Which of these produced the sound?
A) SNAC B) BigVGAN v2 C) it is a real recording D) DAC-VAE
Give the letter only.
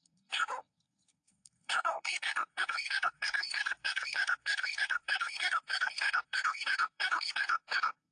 A